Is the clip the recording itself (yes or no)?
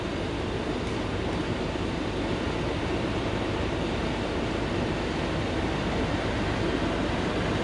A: no